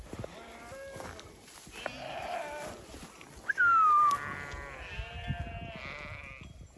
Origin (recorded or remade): recorded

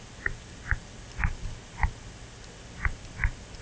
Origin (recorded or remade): recorded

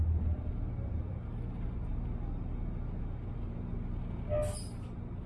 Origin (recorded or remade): recorded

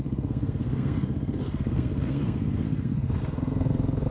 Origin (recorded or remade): remade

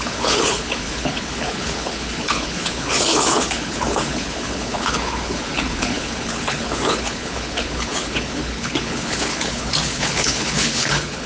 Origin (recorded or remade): remade